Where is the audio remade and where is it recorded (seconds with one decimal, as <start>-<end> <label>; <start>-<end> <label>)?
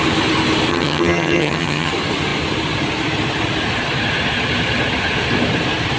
0.0-0.7 recorded; 0.7-1.9 remade; 1.9-6.0 recorded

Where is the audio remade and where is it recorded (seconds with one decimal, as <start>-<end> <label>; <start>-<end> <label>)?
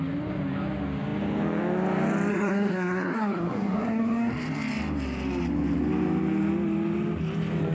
0.0-2.3 recorded; 2.3-4.3 remade; 4.3-7.7 recorded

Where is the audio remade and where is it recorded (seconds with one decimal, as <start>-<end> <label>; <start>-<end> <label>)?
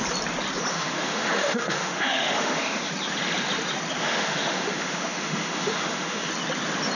0.0-0.7 recorded; 0.7-2.9 remade; 2.9-4.0 recorded; 4.0-6.3 remade; 6.3-6.9 recorded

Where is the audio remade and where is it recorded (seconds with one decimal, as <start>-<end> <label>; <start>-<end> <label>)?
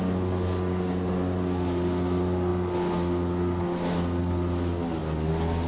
0.0-5.7 recorded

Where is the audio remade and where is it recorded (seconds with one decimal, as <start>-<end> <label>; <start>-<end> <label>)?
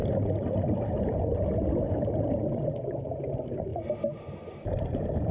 0.0-5.3 recorded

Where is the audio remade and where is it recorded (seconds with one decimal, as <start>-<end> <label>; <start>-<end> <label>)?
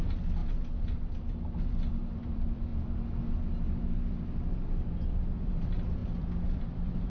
0.0-0.4 remade; 0.4-1.7 recorded; 1.7-2.7 remade; 2.7-3.4 recorded; 3.4-7.1 remade